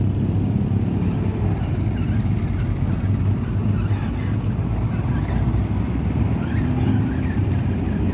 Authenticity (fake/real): real